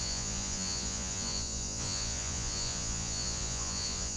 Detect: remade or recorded remade